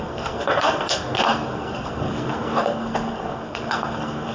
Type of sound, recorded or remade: remade